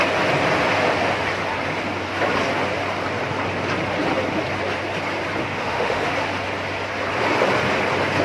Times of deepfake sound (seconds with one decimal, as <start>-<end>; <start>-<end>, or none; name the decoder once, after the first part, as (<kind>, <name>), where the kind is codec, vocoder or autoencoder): 5.4-6.1 (autoencoder, DAC-VAE)